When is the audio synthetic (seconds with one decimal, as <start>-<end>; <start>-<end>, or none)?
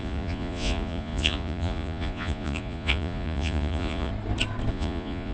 0.0-4.1; 4.7-5.3